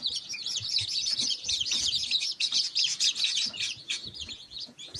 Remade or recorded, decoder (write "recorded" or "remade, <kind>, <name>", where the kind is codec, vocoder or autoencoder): remade, vocoder, Vocos